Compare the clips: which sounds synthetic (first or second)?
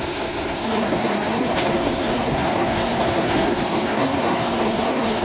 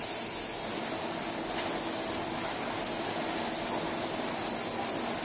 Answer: first